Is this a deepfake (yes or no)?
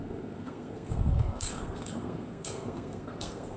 yes